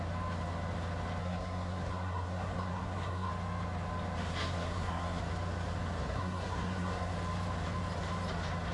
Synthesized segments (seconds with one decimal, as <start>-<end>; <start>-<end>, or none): 1.2-3.3; 4.3-5.2; 6.0-7.1